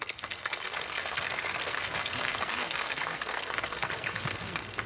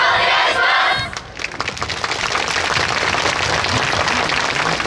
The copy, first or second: first